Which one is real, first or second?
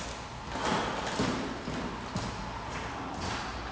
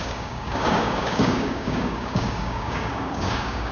first